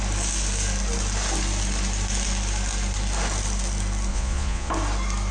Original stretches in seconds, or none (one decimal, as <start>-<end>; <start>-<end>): 0.0-4.1; 4.7-5.3